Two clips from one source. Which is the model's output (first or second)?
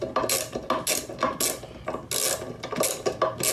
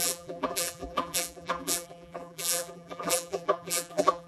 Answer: second